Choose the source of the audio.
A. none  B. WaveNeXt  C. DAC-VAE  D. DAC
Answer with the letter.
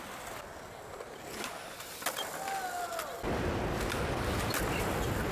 A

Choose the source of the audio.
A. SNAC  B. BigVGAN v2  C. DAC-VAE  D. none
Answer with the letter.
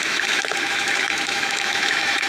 C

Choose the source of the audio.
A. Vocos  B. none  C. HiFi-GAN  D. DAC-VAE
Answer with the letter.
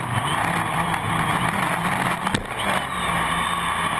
B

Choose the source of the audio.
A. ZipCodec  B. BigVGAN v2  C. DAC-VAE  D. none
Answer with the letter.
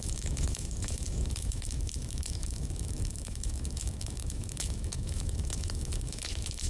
C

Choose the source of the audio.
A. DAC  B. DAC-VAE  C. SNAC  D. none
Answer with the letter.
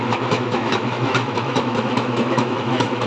B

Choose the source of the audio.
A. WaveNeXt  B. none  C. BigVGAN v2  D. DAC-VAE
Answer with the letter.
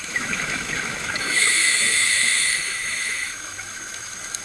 D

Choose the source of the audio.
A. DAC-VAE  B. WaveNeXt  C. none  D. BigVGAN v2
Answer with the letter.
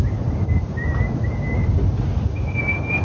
C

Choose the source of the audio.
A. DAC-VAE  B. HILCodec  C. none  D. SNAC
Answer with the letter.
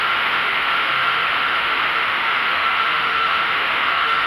A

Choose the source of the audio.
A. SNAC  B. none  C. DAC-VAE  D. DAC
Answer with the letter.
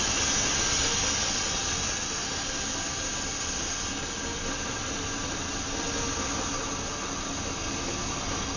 B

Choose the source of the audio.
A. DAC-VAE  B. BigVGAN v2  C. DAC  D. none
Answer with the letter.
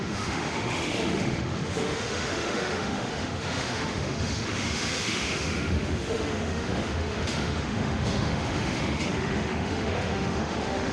A